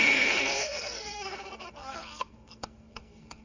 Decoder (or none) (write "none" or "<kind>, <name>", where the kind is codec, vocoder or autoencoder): codec, SNAC